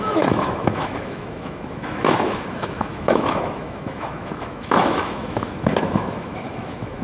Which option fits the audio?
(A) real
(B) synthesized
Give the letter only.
B